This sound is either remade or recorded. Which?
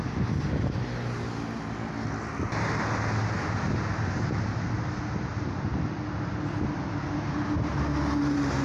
recorded